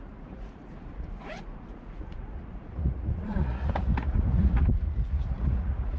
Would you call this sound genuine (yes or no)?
no